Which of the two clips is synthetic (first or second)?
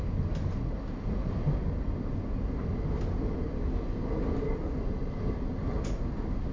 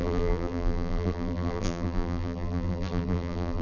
second